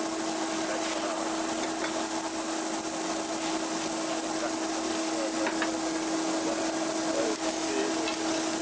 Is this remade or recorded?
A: recorded